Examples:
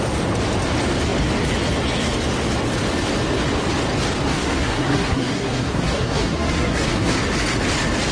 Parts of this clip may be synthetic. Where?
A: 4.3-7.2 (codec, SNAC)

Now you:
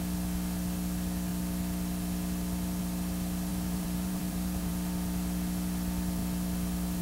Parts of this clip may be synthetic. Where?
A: 3.5-4.7 (vocoder, BigVGAN v2)

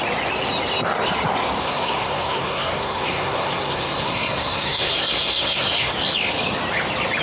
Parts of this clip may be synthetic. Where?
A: 1.6-5.9 (codec, SNAC)